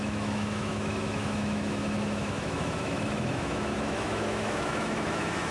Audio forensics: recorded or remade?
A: remade